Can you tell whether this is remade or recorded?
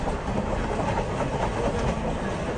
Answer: recorded